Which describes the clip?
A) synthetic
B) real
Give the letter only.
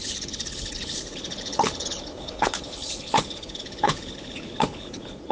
A